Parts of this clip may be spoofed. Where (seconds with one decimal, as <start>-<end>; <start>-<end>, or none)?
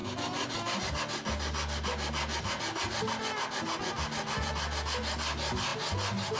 0.0-0.8; 3.8-4.5